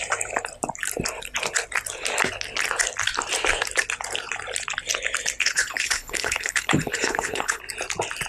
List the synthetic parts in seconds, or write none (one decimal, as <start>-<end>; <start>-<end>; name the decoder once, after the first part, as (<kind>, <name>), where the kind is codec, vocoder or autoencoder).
5.4-7.6 (codec, HILCodec)